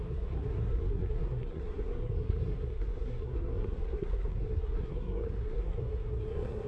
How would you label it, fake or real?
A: fake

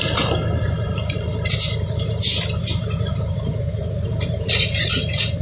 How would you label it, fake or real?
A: real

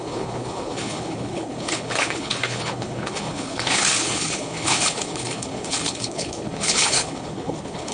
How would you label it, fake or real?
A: fake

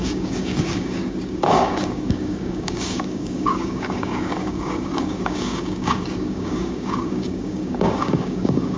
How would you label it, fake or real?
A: fake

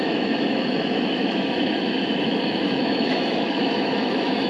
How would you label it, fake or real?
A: fake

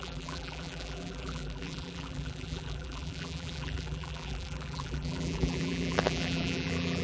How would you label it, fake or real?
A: fake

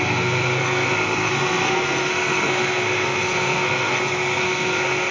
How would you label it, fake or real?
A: fake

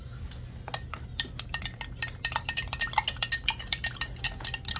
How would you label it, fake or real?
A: real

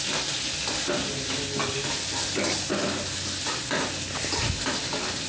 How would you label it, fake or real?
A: real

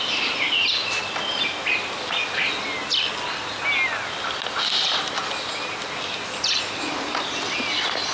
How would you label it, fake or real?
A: real